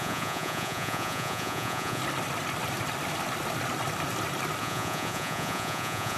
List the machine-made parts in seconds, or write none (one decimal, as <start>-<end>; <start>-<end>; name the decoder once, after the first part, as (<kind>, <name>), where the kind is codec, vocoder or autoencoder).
0.0-2.0 (vocoder, Vocos); 4.6-6.2